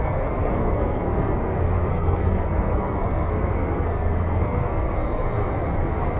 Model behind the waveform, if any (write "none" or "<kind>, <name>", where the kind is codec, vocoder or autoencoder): codec, SNAC